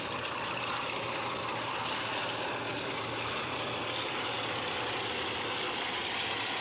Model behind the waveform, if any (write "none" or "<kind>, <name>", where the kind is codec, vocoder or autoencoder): none